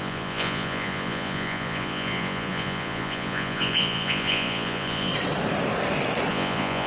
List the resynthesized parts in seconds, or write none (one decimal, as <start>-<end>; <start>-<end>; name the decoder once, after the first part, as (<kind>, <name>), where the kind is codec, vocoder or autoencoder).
0.0-5.1 (vocoder, Vocos); 6.3-6.9